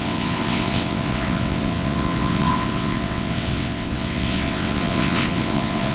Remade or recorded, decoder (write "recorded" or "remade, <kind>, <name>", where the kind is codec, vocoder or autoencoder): remade, vocoder, WaveNeXt